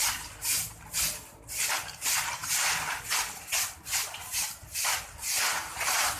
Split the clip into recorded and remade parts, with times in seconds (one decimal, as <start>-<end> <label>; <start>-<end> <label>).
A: 0.0-6.2 recorded